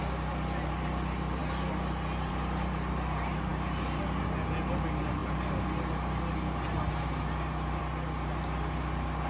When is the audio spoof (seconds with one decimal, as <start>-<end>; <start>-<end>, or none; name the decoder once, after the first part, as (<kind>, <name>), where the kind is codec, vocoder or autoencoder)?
none